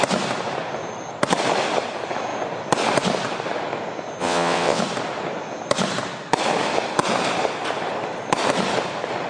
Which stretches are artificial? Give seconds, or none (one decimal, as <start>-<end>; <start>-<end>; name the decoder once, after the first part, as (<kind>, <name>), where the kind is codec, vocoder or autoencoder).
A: 4.2-4.8 (vocoder, WaveNeXt)

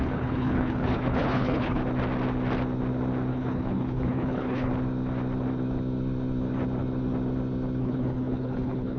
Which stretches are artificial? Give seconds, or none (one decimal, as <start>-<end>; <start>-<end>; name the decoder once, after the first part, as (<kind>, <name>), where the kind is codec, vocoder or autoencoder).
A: 0.0-1.8 (codec, HILCodec); 3.3-4.7; 7.8-9.0

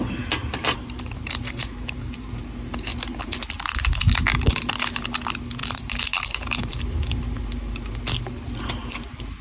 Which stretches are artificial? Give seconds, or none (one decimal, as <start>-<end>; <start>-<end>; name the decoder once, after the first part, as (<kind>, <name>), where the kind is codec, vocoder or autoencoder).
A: 0.4-2.3 (vocoder, BigVGAN v2); 5.6-6.7

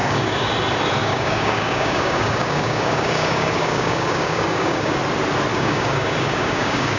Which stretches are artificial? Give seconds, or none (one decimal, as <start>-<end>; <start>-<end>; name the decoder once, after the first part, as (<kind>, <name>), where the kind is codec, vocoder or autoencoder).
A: 0.0-0.5 (codec, DAC); 1.0-5.0; 5.5-7.0

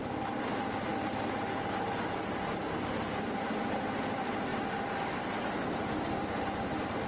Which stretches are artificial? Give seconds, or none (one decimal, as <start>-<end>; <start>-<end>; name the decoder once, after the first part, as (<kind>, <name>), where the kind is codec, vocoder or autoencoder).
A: 0.0-0.9 (vocoder, BigVGAN v2); 2.4-4.5; 5.4-7.1

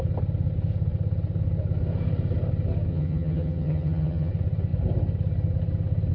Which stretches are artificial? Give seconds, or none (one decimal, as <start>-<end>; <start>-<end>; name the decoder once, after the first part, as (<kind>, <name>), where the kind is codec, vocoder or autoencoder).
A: 2.9-4.3 (vocoder, HiFi-GAN)

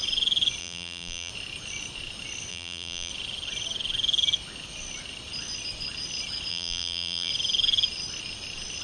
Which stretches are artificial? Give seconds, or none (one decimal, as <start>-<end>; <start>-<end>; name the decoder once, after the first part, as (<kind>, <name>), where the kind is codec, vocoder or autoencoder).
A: 0.6-1.3 (vocoder, BigVGAN v2); 2.5-3.1; 6.5-7.3